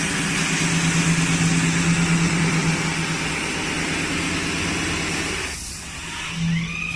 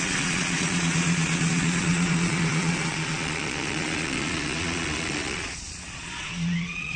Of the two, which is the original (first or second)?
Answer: first